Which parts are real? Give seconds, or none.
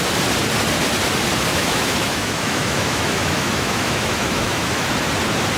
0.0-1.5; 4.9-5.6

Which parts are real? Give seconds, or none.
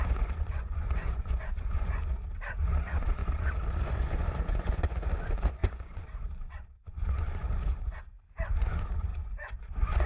2.2-2.8; 3.2-3.8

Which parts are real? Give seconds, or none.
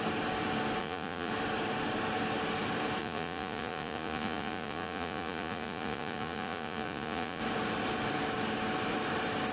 0.0-0.8; 1.3-3.0; 7.4-9.5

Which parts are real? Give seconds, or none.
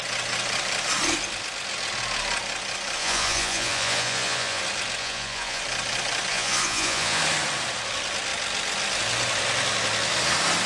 0.0-3.0; 4.6-5.0; 5.6-6.3; 7.2-10.7